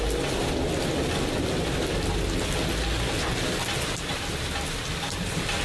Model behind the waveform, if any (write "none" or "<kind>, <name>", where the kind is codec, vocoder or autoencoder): none